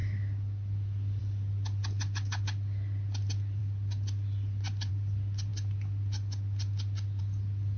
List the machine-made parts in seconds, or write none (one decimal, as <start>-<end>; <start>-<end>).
none